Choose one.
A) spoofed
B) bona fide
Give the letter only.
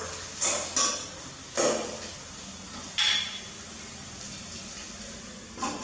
B